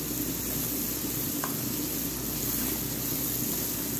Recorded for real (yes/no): yes